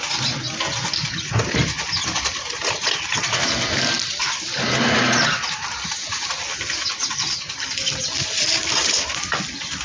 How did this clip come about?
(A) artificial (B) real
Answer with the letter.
B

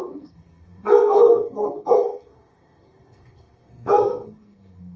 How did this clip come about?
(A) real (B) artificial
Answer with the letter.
B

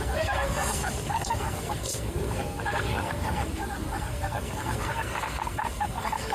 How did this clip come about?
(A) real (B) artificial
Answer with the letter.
B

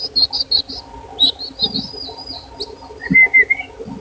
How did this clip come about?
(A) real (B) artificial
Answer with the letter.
A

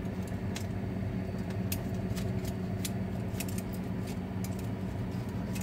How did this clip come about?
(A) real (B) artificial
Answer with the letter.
A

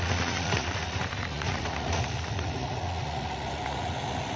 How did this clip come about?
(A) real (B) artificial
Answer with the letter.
B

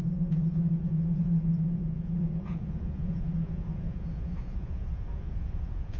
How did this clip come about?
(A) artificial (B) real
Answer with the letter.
A